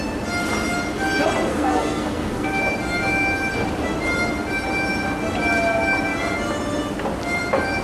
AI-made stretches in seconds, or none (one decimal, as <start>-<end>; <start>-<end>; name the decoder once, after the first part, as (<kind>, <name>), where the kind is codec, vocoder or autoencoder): 1.5-2.6 (codec, SNAC)